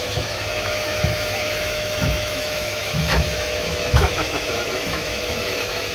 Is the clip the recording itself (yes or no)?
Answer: no